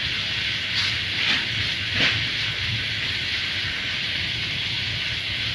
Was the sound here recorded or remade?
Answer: recorded